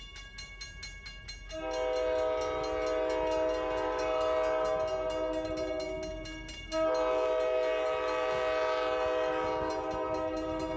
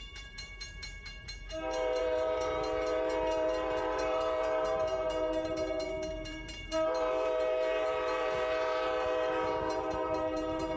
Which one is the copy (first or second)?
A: second